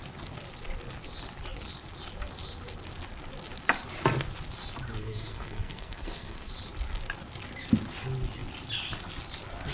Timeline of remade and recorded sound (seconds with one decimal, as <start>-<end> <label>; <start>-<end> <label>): 0.0-5.0 recorded; 5.0-6.5 remade; 6.5-9.7 recorded